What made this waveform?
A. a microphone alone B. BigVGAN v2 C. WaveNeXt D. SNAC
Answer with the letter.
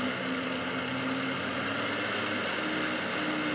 A